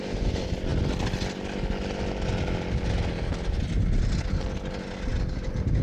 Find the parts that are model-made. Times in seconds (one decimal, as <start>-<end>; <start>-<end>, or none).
none